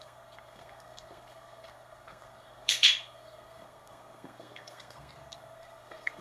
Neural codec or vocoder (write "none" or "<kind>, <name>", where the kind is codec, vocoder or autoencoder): codec, SNAC